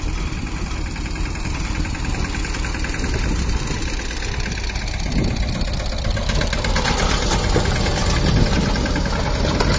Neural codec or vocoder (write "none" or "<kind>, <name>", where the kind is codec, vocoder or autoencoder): none